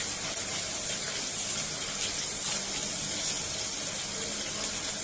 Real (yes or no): yes